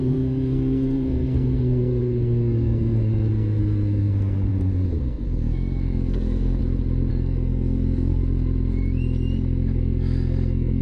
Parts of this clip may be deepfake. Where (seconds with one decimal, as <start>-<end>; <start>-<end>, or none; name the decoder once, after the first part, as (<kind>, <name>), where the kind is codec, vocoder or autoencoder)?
0.0-4.5 (codec, SNAC); 5.0-6.6; 7.1-8.2; 9.8-10.8